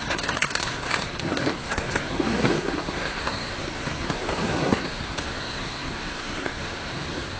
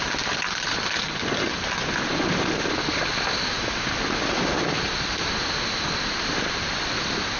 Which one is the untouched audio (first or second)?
second